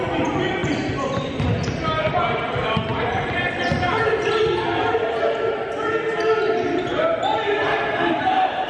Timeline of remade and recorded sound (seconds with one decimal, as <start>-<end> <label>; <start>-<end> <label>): 0.0-8.7 recorded